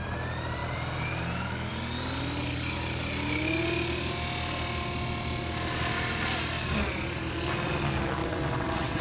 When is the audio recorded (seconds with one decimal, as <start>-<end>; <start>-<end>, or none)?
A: 0.0-8.2